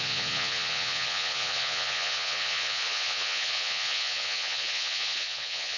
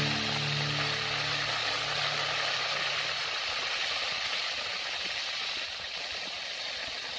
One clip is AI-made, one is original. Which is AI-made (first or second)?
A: first